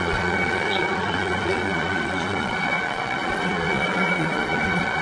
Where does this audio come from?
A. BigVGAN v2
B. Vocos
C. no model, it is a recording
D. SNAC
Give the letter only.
B